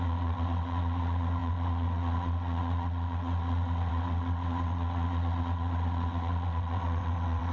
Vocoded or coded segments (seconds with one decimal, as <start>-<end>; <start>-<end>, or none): 0.0-7.5